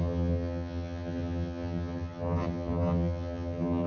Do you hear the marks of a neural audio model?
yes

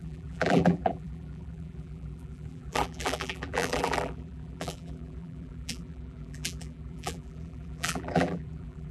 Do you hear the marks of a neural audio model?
yes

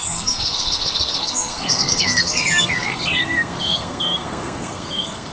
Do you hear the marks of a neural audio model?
yes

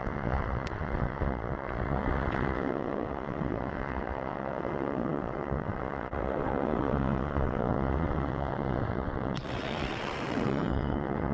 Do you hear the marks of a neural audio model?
yes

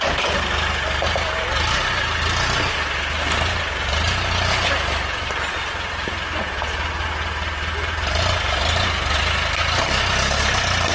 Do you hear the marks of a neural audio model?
no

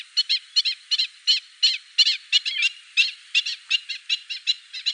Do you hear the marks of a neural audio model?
no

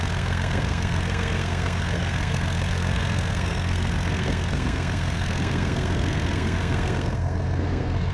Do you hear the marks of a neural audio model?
yes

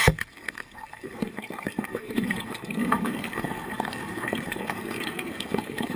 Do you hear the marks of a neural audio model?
yes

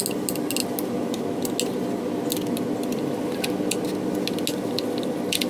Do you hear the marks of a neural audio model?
no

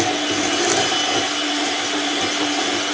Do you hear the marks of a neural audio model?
no